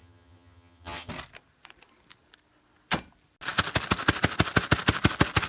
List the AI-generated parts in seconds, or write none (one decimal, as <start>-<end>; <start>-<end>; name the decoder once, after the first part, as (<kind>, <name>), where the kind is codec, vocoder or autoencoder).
0.0-1.1 (vocoder, HiFi-GAN)